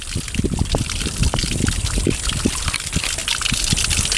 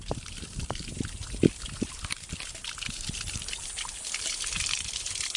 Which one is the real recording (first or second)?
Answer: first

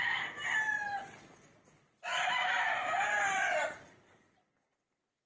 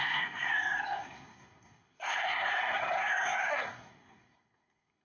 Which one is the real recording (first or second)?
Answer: first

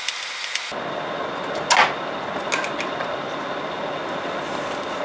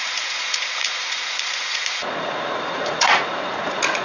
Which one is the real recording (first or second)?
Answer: first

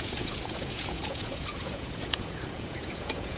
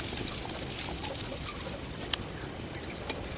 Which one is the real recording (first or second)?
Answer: second